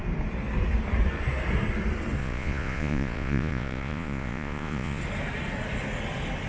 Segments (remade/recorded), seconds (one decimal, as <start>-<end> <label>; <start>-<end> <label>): 0.0-2.2 recorded; 2.2-5.0 remade; 5.0-6.5 recorded